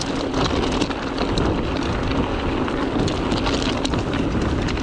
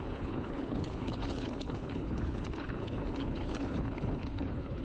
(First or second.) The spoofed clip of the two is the second